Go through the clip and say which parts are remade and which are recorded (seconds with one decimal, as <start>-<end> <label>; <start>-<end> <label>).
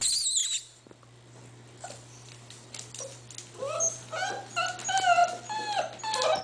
0.0-6.4 recorded